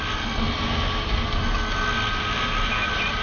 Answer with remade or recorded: recorded